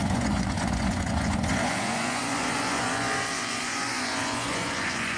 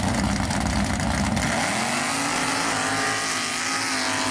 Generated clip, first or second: first